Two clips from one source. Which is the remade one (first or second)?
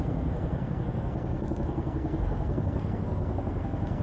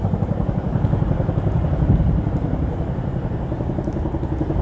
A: first